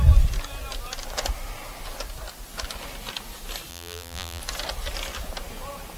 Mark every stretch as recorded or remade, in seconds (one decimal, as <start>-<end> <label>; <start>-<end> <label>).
0.0-3.7 recorded; 3.7-4.4 remade; 4.4-6.0 recorded